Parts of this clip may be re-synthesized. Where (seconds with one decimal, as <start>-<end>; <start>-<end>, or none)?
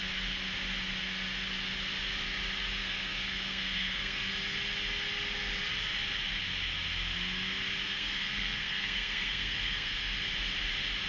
2.8-4.3; 7.8-10.1